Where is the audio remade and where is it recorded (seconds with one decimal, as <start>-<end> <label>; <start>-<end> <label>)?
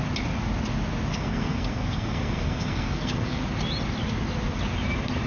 0.0-1.1 recorded; 1.1-3.4 remade; 3.4-5.3 recorded